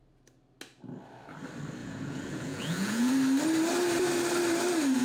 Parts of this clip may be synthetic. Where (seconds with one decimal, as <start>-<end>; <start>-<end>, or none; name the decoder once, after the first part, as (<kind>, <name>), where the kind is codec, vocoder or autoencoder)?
1.8-3.1 (vocoder, Vocos)